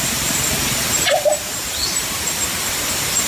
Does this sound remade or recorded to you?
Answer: recorded